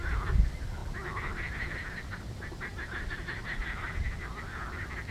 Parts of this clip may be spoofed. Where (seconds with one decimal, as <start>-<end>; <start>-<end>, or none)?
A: none